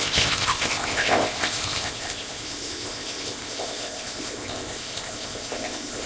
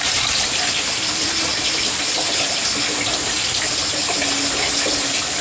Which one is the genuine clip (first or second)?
second